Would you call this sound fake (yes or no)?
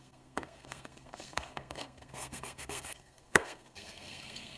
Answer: yes